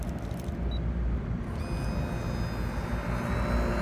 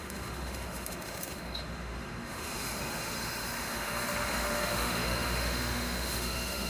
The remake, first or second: second